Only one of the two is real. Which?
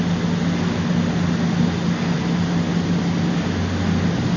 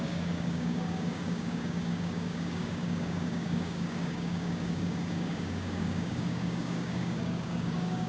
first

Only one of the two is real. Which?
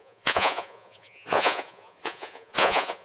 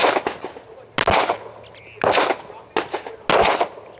second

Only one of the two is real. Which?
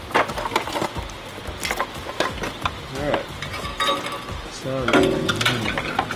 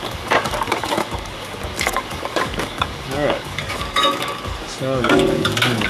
first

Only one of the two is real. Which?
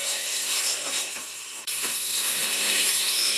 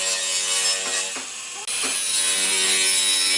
second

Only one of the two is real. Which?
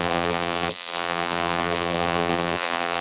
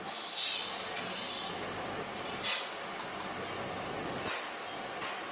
second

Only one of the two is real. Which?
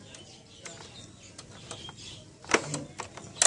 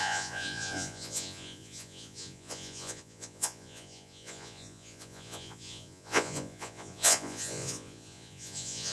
first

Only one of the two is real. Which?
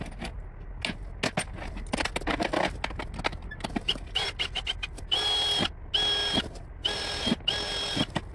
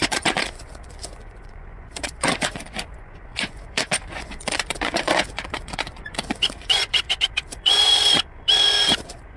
first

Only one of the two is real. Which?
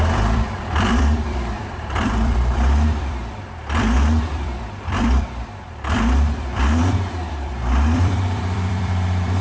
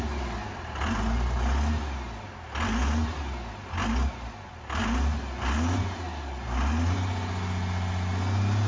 second